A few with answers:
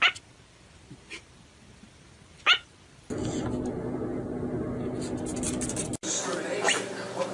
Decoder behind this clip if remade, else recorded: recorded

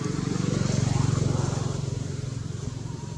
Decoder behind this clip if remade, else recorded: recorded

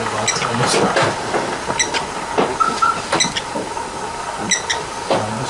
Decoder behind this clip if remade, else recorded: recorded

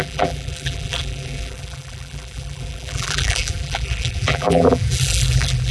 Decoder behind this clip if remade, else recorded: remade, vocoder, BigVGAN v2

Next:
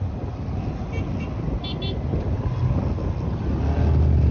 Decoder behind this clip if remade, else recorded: recorded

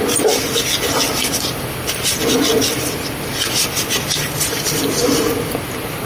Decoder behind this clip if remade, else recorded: recorded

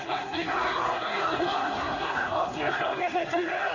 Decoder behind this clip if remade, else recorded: remade, codec, SNAC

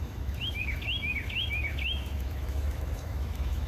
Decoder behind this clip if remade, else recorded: remade, autoencoder, DAC-VAE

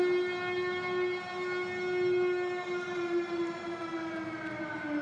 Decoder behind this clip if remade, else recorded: recorded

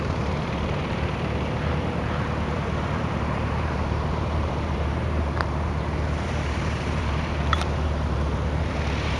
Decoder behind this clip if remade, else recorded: remade, vocoder, BigVGAN v2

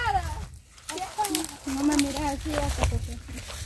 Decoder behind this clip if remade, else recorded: recorded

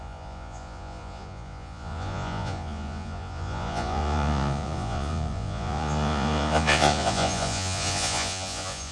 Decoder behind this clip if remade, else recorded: remade, vocoder, Vocos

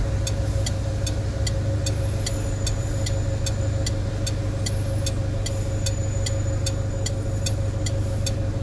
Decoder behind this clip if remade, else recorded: recorded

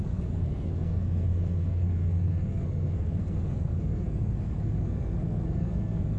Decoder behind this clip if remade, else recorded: remade, codec, SNAC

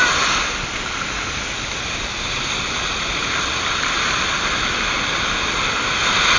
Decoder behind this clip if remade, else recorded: recorded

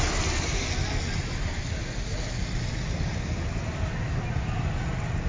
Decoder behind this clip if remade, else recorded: recorded